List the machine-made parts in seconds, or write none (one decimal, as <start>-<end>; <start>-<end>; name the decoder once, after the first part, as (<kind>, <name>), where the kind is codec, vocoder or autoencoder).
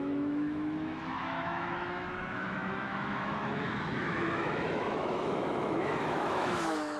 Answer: 0.0-7.0 (autoencoder, DAC-VAE)